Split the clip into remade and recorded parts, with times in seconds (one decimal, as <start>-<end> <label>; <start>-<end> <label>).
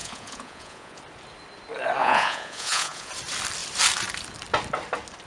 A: 0.0-1.0 remade; 1.0-2.0 recorded; 2.0-3.1 remade; 3.1-5.3 recorded